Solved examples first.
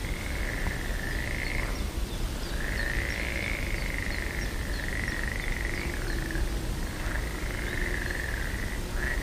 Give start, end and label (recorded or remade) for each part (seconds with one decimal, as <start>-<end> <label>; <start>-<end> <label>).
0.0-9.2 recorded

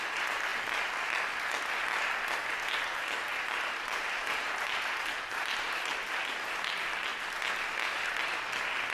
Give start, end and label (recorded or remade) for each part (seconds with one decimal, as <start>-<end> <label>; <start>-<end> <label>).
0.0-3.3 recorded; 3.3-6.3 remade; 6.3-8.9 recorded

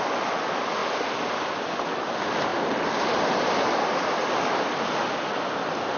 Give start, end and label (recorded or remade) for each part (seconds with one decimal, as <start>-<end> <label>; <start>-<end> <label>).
0.0-6.0 recorded

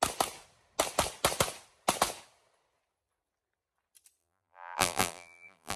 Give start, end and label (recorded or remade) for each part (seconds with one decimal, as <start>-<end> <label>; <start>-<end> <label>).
0.0-4.2 recorded; 4.2-5.8 remade

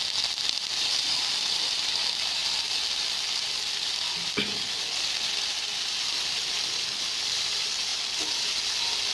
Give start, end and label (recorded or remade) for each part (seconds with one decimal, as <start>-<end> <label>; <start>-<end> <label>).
0.0-2.4 remade; 2.4-6.2 recorded; 6.2-7.9 remade; 7.9-9.1 recorded

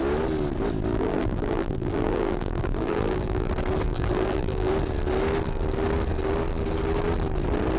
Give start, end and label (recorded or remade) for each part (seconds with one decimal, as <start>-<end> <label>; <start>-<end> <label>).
0.0-0.9 recorded; 0.9-3.5 remade; 3.5-3.9 recorded; 3.9-4.7 remade; 4.7-7.8 recorded

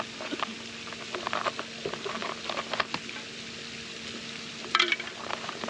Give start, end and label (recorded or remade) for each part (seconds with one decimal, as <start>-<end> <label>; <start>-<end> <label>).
0.0-5.7 recorded

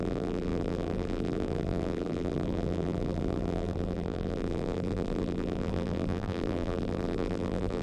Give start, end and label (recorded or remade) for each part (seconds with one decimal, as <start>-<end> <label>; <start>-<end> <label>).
0.0-7.8 remade